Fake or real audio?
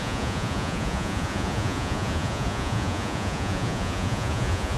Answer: fake